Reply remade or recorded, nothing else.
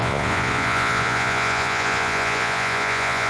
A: remade